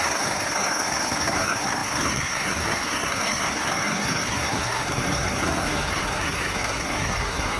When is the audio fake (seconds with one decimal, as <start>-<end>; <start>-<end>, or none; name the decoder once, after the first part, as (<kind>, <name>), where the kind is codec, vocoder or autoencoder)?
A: 0.0-7.6 (codec, SNAC)

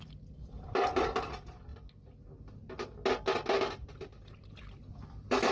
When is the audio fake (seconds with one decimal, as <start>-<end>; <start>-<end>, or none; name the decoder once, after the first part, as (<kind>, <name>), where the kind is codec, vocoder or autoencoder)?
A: 0.0-1.7 (vocoder, BigVGAN v2); 4.9-5.5

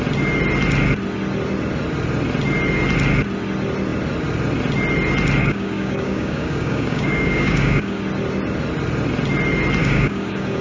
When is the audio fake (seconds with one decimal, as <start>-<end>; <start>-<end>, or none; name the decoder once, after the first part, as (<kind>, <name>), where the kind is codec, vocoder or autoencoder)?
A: 5.4-8.0 (codec, DAC); 9.8-10.6

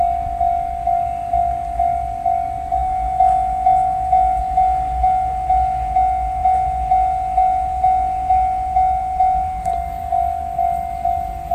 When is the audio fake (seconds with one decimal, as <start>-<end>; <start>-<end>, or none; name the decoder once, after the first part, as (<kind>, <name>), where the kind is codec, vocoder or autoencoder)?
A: none

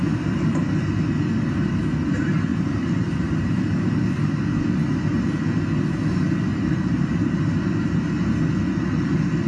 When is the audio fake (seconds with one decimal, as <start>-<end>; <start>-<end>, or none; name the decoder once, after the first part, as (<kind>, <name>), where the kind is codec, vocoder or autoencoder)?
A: 2.5-3.9 (vocoder, BigVGAN v2); 6.5-7.4

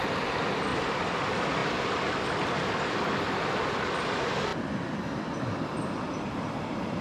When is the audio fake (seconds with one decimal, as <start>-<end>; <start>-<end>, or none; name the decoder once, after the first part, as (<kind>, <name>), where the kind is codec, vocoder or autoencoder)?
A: none

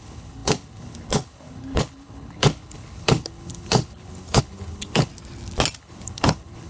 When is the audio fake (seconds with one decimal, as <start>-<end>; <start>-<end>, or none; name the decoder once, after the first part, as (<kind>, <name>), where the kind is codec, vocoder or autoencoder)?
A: 0.0-5.1 (codec, HILCodec); 5.8-6.7